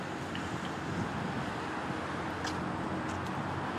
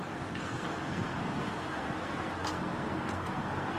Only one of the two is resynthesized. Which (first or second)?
second